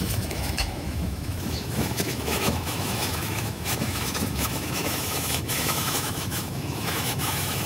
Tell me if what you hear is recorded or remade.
remade